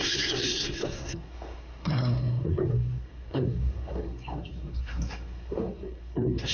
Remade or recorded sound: remade